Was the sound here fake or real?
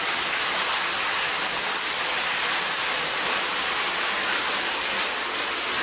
real